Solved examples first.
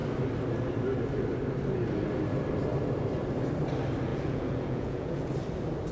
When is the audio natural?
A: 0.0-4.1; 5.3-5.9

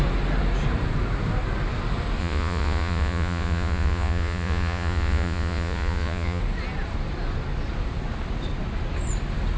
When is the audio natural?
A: 0.0-2.2; 6.4-9.6

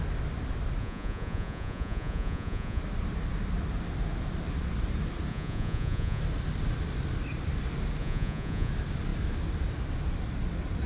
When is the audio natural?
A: 0.0-0.8; 2.8-5.3; 6.2-8.0; 8.7-10.9

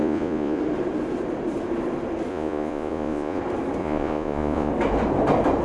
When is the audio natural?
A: 0.6-2.3; 3.4-3.8; 4.7-5.6

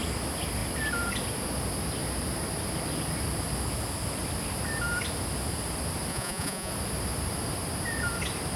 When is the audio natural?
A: 0.0-6.1; 6.7-8.6